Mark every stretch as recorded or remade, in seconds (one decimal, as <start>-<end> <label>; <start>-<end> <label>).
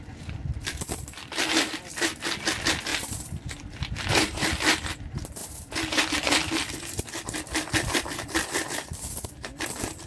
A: 0.0-0.6 recorded; 0.6-2.1 remade; 2.1-2.9 recorded; 2.9-5.0 remade; 5.0-5.4 recorded; 5.4-9.6 remade; 9.6-10.1 recorded